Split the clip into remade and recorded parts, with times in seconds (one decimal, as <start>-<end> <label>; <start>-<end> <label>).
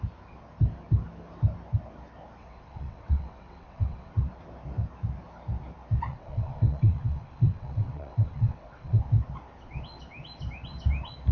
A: 0.0-2.4 recorded; 2.4-4.1 remade; 4.1-6.1 recorded; 6.1-9.0 remade; 9.0-11.3 recorded